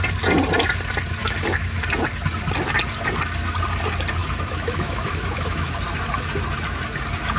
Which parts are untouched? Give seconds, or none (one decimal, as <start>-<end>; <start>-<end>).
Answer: 0.0-1.2; 1.8-4.2; 5.7-7.4